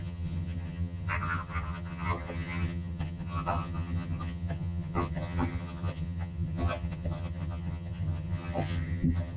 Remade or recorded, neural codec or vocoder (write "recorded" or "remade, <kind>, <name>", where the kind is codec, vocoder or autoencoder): remade, vocoder, HiFi-GAN